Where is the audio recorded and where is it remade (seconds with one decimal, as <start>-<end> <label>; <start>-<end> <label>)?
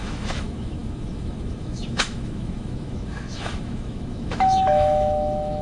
0.0-5.6 remade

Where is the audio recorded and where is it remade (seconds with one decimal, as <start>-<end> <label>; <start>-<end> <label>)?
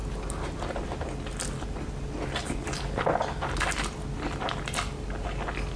0.0-5.8 recorded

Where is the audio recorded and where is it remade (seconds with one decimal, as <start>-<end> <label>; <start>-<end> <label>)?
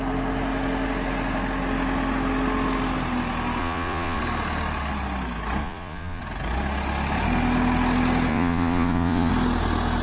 0.0-3.6 recorded; 3.6-4.2 remade; 4.2-5.6 recorded; 5.6-6.2 remade; 6.2-8.3 recorded; 8.3-9.3 remade; 9.3-10.0 recorded